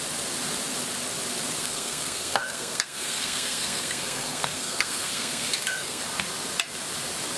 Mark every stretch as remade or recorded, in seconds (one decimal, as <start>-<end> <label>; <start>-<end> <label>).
0.0-1.6 recorded; 1.6-6.0 remade; 6.0-7.4 recorded